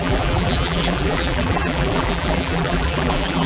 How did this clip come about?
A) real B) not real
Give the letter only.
B